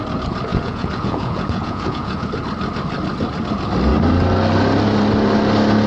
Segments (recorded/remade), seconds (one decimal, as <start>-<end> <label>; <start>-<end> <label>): 0.0-0.5 recorded; 0.5-2.3 remade; 2.3-5.9 recorded